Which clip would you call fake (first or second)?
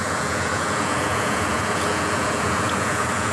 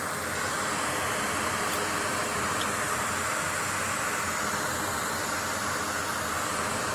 first